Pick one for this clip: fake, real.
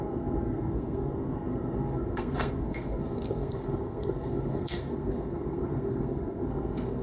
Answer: fake